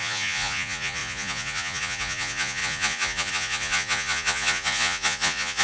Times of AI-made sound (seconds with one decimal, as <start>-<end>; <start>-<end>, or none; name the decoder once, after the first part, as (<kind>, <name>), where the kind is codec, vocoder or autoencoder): 0.0-5.6 (vocoder, Vocos)